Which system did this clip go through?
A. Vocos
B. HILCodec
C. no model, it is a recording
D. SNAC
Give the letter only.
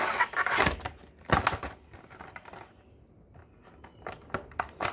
C